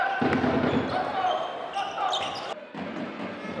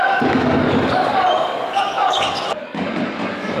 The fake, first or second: second